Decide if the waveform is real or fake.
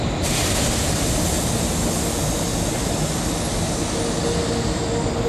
real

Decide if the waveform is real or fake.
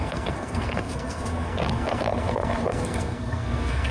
fake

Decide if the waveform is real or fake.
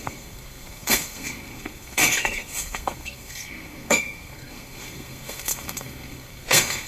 fake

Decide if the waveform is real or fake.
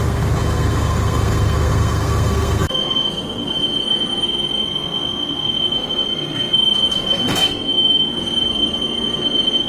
fake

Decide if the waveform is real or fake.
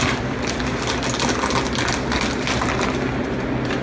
real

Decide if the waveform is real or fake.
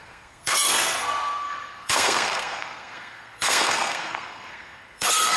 fake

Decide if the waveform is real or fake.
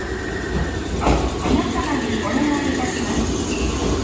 real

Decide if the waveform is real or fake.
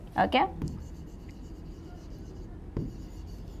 real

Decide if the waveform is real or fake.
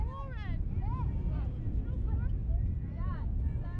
real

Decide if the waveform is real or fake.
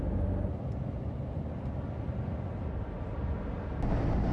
real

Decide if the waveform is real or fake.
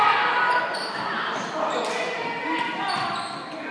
real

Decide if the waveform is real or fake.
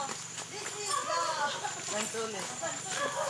real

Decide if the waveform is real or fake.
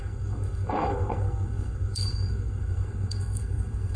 fake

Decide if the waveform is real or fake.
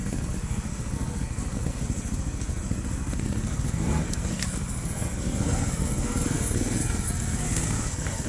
fake